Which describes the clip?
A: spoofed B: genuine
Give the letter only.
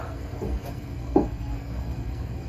A